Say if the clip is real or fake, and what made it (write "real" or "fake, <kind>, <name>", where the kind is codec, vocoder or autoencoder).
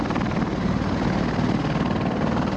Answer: real